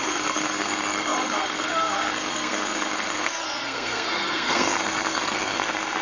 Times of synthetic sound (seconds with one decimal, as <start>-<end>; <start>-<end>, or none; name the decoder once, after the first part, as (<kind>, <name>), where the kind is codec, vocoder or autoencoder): 0.0-6.0 (codec, SNAC)